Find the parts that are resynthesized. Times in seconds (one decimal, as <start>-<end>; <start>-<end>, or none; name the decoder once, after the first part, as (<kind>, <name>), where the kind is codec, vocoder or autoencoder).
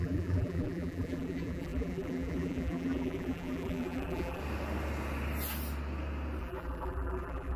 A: 0.0-4.4 (vocoder, BigVGAN v2); 6.4-7.6